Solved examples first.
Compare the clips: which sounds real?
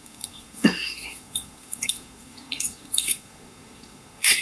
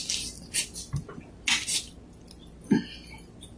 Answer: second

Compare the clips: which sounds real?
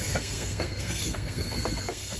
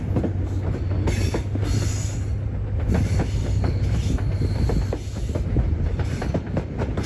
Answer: second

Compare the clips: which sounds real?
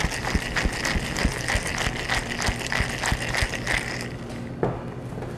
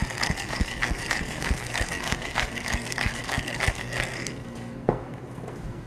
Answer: first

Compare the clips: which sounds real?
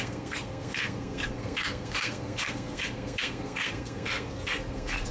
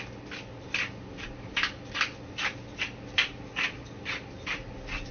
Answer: second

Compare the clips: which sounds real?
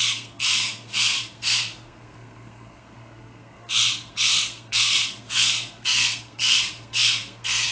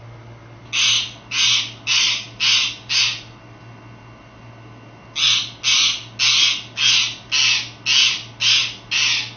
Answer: second